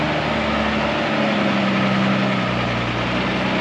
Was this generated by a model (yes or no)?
no